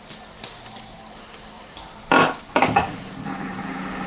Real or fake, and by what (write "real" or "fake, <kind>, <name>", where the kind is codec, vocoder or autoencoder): real